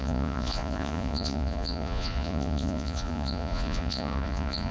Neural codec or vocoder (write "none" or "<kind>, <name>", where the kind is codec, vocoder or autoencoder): vocoder, Vocos